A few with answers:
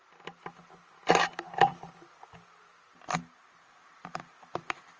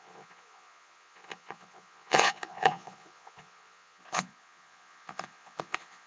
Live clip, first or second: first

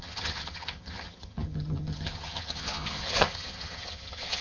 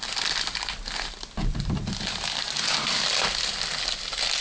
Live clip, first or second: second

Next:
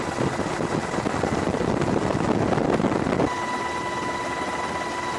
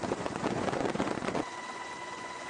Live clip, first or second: first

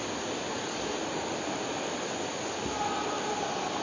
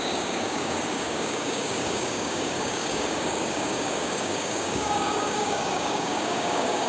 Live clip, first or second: first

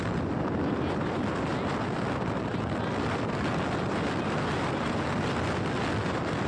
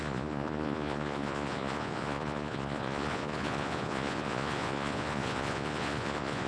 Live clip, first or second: first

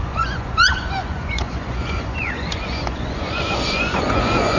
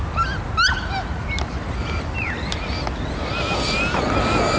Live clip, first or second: second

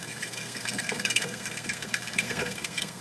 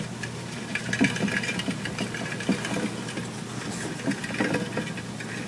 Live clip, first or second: second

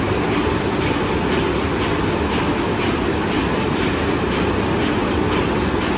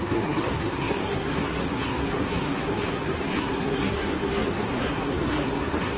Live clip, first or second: first